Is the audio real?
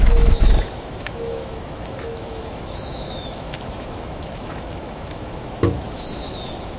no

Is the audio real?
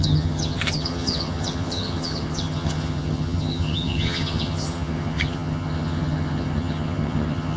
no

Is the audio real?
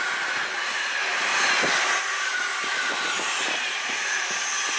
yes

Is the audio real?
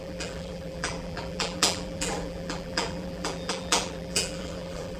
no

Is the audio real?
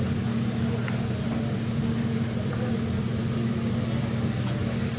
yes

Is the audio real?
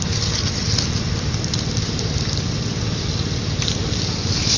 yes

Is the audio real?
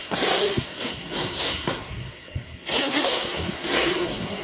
no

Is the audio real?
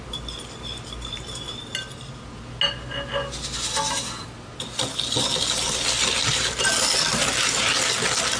yes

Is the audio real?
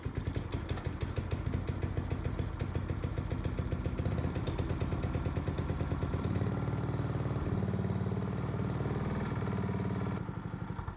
yes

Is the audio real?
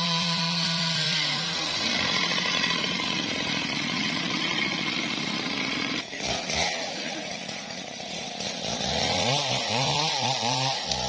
no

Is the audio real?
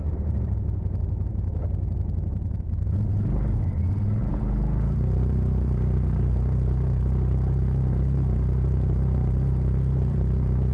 no